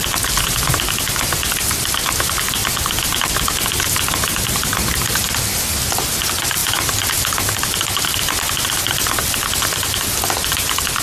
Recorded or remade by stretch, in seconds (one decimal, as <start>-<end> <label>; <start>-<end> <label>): 0.0-11.0 recorded